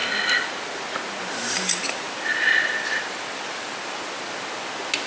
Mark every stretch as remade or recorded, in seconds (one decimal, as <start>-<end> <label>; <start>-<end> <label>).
0.0-2.3 recorded; 2.3-4.1 remade; 4.1-5.1 recorded